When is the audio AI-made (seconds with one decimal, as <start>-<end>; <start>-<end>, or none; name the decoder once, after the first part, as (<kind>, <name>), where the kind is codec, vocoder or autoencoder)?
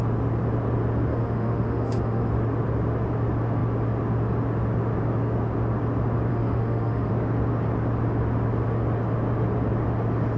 1.1-2.3 (autoencoder, DAC-VAE); 6.3-7.1